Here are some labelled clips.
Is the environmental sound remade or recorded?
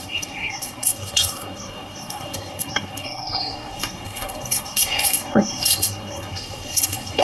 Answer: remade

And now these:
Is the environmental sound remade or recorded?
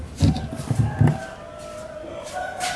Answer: recorded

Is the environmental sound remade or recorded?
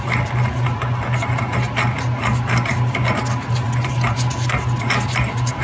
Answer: recorded